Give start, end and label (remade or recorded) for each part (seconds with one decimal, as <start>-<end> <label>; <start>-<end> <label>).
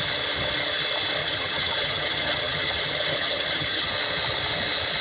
0.0-1.2 recorded; 1.2-3.9 remade; 3.9-5.0 recorded